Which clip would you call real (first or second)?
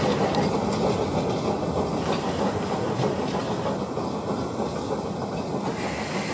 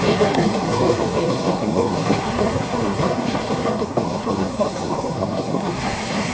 first